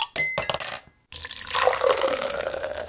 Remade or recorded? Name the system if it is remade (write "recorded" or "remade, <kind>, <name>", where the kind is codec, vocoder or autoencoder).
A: recorded